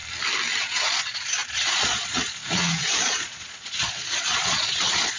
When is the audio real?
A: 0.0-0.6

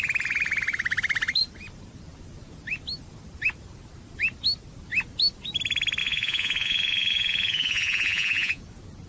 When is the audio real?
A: 0.0-6.0; 8.6-9.1

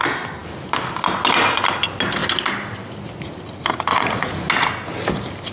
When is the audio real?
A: 0.0-3.9; 4.5-5.5

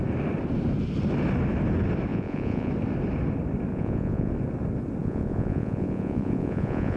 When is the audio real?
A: 0.0-2.1; 2.7-3.7; 4.3-5.0

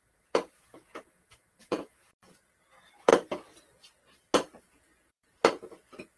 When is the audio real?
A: 3.1-4.6